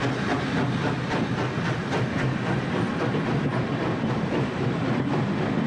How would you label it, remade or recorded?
recorded